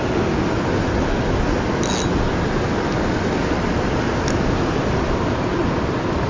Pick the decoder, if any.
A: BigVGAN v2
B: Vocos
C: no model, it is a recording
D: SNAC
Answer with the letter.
C